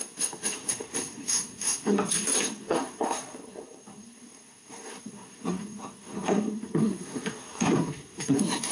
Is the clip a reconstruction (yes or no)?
yes